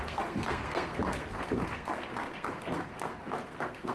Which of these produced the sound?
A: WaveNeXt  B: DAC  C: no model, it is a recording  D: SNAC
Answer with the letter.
D